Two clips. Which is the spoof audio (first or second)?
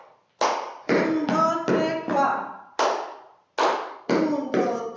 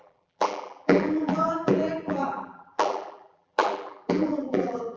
second